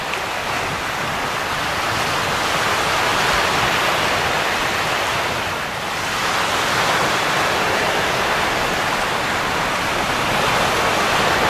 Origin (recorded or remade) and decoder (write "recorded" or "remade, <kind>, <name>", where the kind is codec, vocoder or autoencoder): recorded